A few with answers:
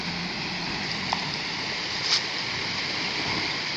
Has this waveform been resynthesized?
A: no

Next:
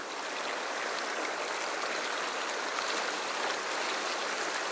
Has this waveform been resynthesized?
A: no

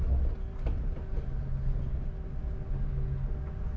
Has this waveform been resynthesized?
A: no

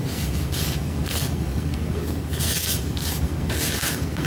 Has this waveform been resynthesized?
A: yes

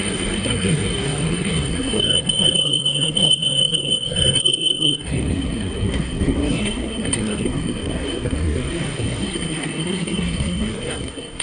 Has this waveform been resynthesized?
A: yes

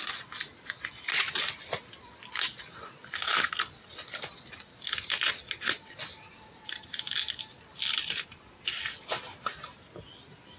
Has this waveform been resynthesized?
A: no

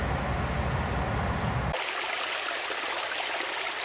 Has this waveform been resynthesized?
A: no